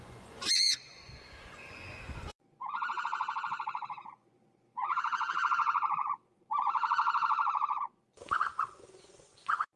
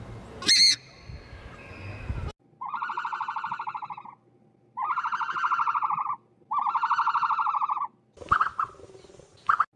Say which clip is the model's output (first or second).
first